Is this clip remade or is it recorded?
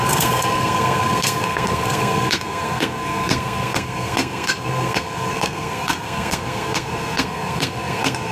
remade